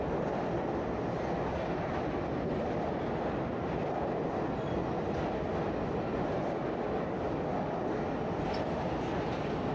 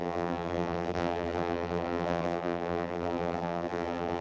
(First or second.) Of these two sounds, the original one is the first